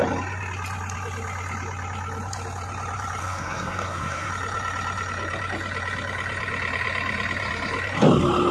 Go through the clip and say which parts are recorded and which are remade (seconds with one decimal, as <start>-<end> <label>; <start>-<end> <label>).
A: 0.0-3.2 recorded; 3.2-4.3 remade; 4.3-8.5 recorded